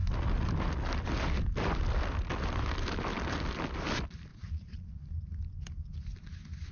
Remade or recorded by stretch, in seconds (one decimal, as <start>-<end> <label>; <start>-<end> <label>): 0.0-4.3 recorded; 4.3-4.9 remade; 4.9-6.7 recorded